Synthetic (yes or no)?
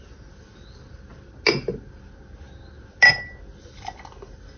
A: no